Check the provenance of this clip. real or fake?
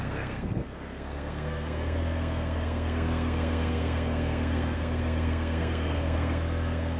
fake